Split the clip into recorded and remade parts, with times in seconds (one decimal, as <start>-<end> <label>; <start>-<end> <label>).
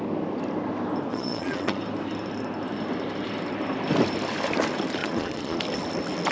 0.0-1.1 recorded; 1.1-1.8 remade; 1.8-5.0 recorded; 5.0-5.6 remade; 5.6-6.3 recorded